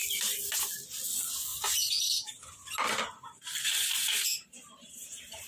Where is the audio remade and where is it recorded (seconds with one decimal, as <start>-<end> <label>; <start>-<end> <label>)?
0.0-1.5 recorded; 1.5-2.4 remade; 2.4-4.0 recorded; 4.0-5.5 remade